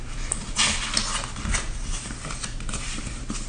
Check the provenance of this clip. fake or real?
real